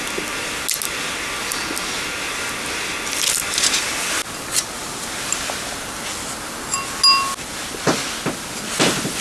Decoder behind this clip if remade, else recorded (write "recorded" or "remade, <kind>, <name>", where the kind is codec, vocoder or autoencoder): recorded